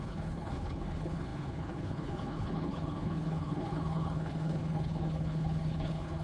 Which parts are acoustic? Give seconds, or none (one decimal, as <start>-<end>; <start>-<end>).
none